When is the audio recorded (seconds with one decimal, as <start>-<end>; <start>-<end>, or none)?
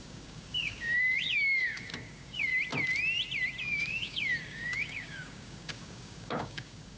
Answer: 2.5-3.6